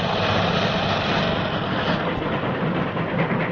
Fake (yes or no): no